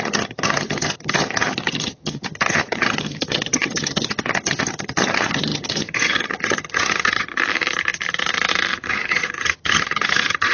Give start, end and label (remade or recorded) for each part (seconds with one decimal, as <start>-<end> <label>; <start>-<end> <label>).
0.0-7.3 remade; 7.3-8.9 recorded; 8.9-10.5 remade